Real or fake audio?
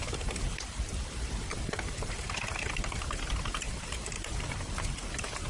fake